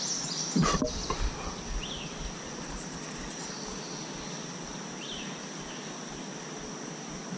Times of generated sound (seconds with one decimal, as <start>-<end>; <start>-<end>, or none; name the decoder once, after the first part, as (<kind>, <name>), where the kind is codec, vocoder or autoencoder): none